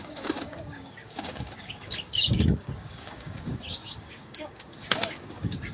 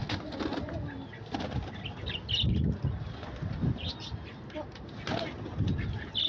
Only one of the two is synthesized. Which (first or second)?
first